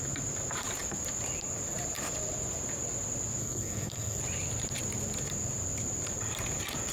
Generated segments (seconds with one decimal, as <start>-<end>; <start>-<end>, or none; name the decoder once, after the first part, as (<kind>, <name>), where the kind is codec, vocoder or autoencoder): 3.4-4.2 (codec, SNAC)